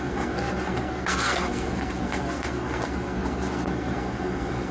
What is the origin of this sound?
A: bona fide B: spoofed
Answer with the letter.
B